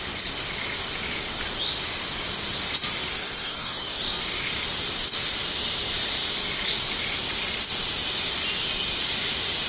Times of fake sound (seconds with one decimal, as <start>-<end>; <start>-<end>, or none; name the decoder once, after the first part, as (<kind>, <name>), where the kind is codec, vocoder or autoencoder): 3.1-4.0 (codec, SNAC)